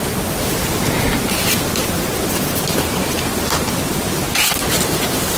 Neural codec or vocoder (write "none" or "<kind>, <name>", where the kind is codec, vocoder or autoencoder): none